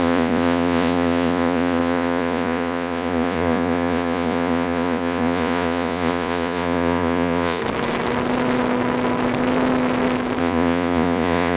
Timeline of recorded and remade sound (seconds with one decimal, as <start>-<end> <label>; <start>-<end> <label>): 0.0-7.6 remade; 7.6-10.4 recorded; 10.4-11.6 remade